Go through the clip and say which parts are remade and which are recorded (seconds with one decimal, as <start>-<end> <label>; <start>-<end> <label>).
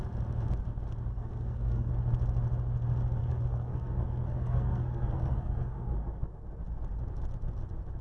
0.0-1.1 recorded; 1.1-1.9 remade; 1.9-3.2 recorded; 3.2-6.3 remade; 6.3-8.0 recorded